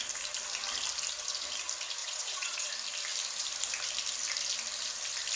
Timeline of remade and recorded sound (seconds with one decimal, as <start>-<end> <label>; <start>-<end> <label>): 0.0-2.0 recorded; 2.0-2.7 remade; 2.7-5.4 recorded